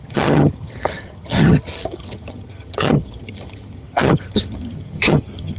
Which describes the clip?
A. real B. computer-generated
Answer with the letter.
B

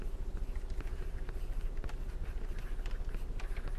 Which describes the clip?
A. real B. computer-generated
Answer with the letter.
A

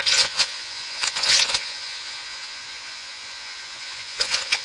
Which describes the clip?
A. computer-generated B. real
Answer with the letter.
A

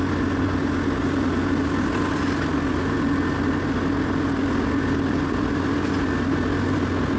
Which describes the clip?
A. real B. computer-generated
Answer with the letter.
A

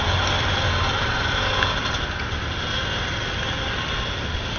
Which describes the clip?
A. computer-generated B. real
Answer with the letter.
B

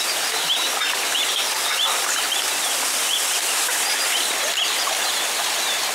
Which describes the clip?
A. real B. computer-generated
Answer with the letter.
A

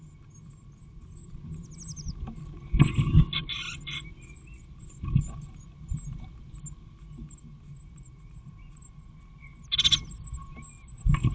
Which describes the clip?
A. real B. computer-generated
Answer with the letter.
A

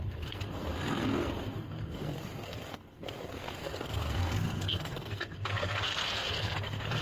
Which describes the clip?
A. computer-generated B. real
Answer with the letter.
A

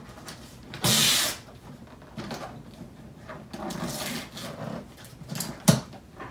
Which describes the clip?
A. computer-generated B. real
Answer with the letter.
B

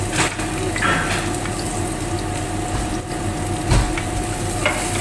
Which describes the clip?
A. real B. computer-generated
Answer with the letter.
A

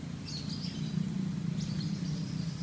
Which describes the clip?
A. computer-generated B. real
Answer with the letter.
B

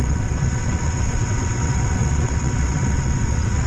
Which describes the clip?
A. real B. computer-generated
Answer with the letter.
B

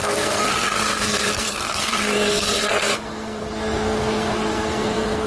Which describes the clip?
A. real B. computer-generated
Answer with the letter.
B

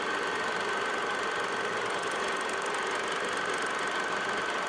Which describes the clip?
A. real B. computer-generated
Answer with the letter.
A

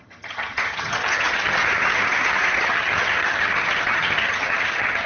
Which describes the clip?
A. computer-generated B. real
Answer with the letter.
A